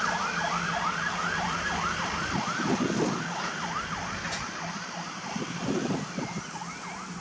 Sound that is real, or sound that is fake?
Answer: real